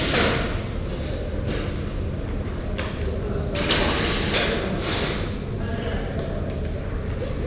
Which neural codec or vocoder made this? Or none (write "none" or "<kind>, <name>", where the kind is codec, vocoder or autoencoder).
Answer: none